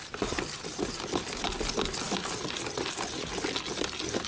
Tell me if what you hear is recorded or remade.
recorded